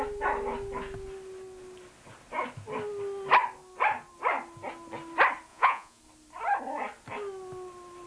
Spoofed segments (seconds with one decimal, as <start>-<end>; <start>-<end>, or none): 5.5-6.0